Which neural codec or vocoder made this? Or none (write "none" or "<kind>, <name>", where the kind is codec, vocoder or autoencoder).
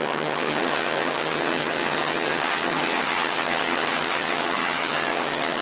vocoder, HiFi-GAN